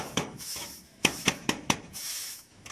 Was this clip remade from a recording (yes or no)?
yes